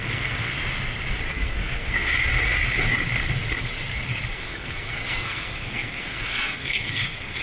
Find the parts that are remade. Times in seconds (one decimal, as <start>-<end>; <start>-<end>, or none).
0.0-0.5; 1.3-2.1; 4.3-7.4